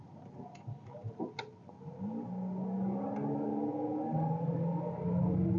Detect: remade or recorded recorded